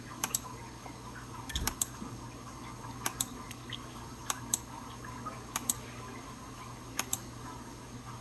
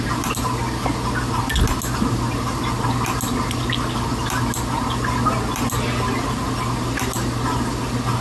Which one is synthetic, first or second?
first